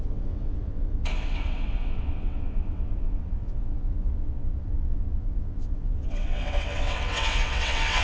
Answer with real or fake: fake